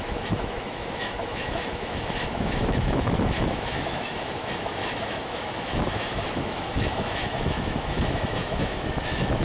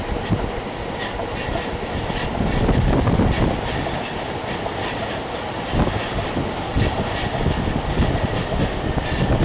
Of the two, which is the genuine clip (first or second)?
second